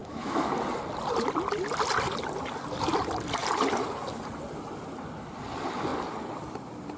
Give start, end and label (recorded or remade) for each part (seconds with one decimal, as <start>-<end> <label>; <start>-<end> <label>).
0.0-0.5 remade; 0.5-7.0 recorded